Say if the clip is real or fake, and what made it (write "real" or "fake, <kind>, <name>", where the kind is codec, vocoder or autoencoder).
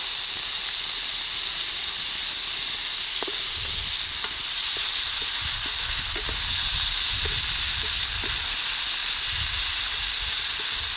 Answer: real